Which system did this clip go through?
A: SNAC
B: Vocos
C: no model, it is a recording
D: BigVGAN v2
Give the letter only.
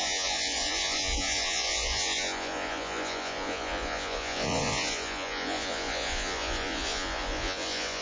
B